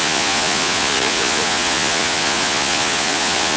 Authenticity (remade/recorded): remade